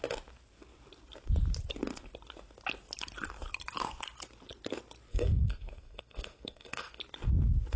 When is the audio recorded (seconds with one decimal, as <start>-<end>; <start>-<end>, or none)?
0.0-5.1; 7.0-7.8